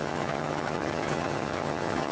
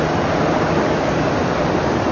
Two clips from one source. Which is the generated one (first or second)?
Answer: first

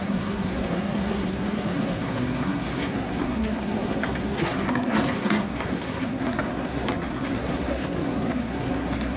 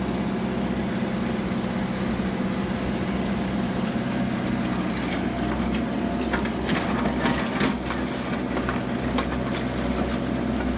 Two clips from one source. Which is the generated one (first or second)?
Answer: first